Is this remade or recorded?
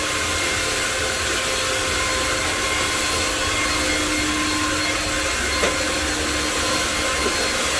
recorded